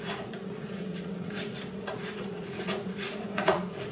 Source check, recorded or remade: remade